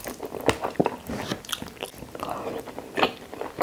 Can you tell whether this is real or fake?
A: real